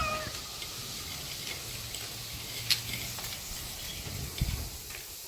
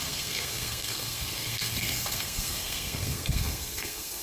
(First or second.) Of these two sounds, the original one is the first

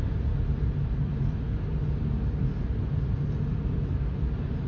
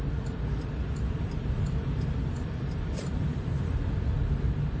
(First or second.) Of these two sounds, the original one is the first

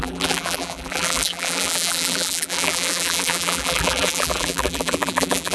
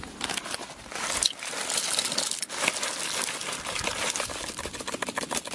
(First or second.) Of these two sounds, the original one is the second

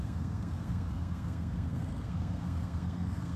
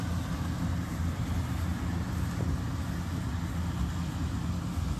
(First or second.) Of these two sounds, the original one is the second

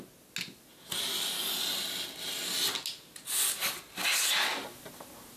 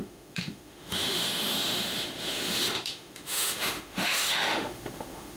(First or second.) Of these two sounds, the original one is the first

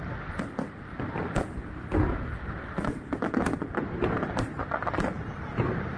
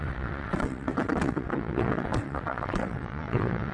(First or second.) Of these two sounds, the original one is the first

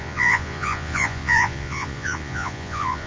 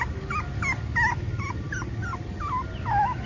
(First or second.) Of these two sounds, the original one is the second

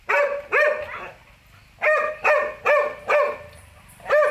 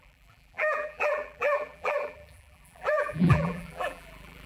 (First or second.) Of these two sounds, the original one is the first